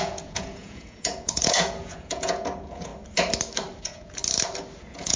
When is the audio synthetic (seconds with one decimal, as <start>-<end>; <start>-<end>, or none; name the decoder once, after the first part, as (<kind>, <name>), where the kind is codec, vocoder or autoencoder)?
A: 0.0-2.9 (vocoder, Vocos); 3.8-4.2; 4.8-5.2